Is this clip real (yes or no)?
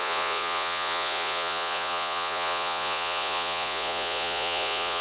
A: no